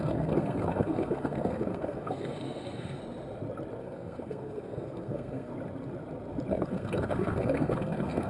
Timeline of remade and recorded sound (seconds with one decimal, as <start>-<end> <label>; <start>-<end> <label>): 0.0-3.0 remade; 3.0-3.8 recorded; 3.8-5.5 remade; 5.5-6.5 recorded; 6.5-8.3 remade